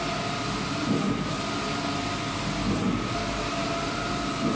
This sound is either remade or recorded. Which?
recorded